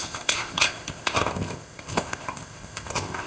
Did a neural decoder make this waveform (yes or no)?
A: yes